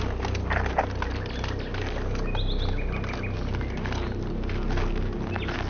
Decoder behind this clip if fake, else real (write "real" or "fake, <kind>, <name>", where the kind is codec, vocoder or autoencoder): real